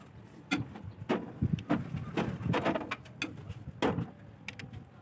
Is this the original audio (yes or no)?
yes